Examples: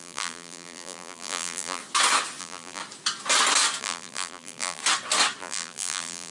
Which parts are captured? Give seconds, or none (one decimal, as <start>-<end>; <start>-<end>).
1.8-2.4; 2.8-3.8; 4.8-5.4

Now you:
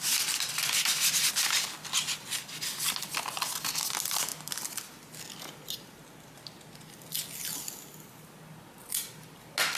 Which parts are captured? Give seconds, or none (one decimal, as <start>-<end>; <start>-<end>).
0.0-9.8

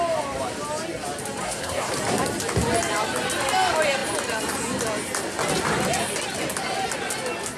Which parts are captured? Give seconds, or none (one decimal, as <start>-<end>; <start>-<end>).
0.0-1.4; 1.9-7.6

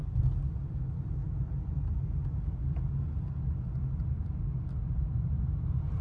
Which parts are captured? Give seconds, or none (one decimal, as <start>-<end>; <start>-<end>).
0.0-6.0

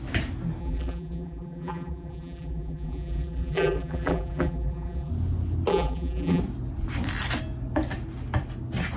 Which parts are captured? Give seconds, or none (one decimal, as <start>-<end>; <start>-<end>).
0.0-0.6; 5.1-5.7; 6.4-9.0

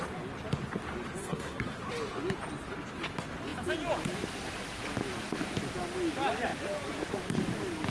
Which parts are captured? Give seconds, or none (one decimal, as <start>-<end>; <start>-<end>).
0.0-1.2; 1.8-7.9

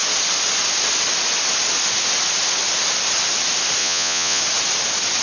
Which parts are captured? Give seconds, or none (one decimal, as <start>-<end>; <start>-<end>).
0.0-3.8; 4.4-5.2

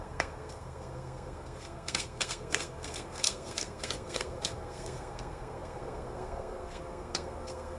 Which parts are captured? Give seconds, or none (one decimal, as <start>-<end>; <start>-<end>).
none